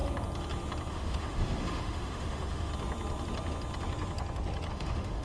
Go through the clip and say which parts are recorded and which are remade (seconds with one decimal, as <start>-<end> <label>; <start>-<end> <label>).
0.0-0.9 recorded; 0.9-2.7 remade; 2.7-4.7 recorded; 4.7-5.2 remade